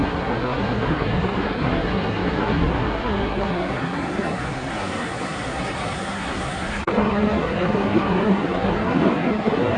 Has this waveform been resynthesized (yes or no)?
yes